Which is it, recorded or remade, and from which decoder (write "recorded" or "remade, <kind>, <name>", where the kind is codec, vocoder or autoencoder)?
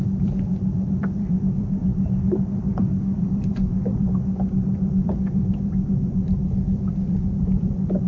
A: remade, vocoder, BigVGAN v2